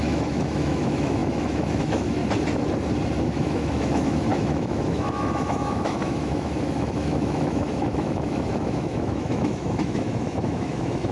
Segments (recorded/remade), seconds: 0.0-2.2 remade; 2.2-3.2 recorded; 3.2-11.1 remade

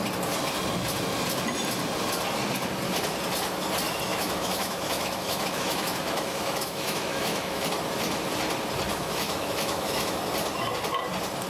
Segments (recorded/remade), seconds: 0.0-4.1 recorded; 4.1-7.6 remade; 7.6-8.9 recorded; 8.9-10.2 remade; 10.2-11.5 recorded

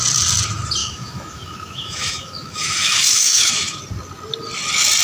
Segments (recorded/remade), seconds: 0.0-0.8 recorded; 0.8-3.8 remade; 3.8-5.0 recorded

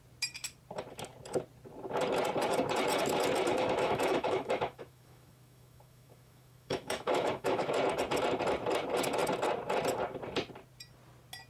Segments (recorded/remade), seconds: 0.0-3.5 recorded; 3.5-7.7 remade; 7.7-11.5 recorded

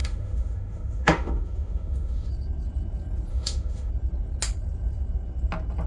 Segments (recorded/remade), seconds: 0.0-2.3 remade; 2.3-3.3 recorded; 3.3-3.9 remade; 3.9-5.9 recorded

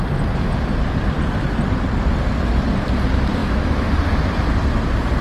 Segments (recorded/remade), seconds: 0.0-3.4 recorded; 3.4-3.9 remade; 3.9-5.2 recorded